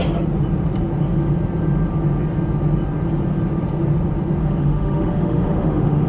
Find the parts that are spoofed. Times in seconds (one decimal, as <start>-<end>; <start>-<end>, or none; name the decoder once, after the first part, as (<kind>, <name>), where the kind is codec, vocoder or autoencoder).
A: 4.4-6.1 (autoencoder, DAC-VAE)